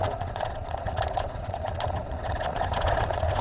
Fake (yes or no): yes